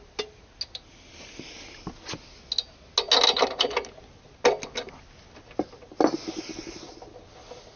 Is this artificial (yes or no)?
no